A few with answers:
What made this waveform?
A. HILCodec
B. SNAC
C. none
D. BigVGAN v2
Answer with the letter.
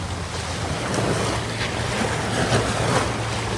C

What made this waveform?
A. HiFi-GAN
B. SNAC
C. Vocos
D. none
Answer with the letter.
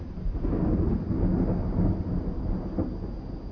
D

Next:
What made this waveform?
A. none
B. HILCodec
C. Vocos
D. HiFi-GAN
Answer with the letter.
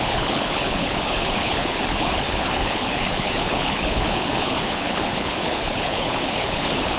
B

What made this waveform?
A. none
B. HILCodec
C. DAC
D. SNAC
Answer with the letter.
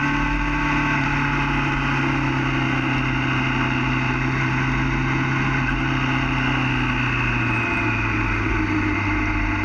A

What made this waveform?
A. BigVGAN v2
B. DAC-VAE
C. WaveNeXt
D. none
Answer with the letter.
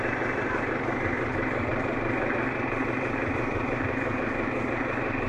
A